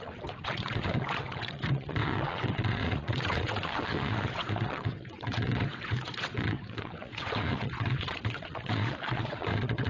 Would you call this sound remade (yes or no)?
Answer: yes